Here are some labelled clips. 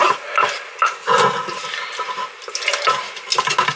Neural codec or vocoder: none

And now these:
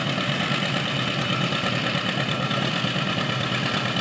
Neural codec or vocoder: none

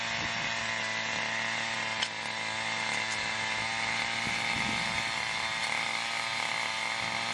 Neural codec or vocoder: none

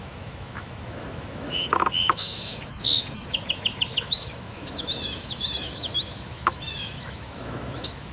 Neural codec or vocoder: autoencoder, DAC-VAE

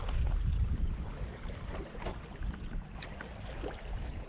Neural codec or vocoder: none